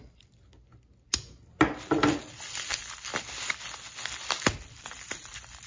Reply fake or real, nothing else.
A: real